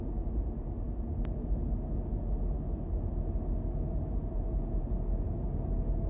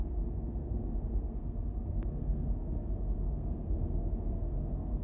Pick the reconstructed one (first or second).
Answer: second